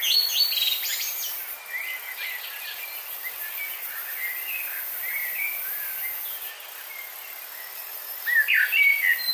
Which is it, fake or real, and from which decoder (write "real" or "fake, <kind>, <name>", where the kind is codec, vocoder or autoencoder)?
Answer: real